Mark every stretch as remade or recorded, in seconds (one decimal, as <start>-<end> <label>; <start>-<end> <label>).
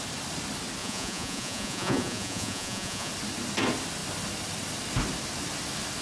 0.0-0.8 recorded; 0.8-3.1 remade; 3.1-6.0 recorded